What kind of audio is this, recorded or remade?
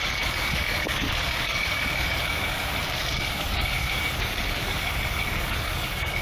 remade